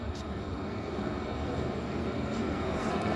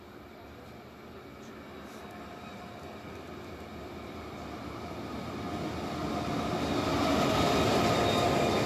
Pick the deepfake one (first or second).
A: first